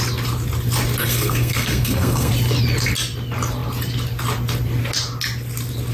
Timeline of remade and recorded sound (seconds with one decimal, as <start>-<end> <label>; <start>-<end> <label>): 0.0-1.0 recorded; 1.0-2.3 remade; 2.3-5.9 recorded